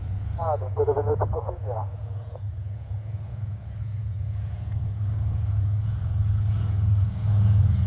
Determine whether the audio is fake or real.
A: fake